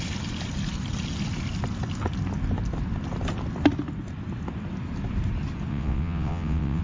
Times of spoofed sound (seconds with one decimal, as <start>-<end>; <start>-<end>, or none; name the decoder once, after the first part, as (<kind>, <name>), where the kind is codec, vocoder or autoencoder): 5.7-6.8 (vocoder, WaveNeXt)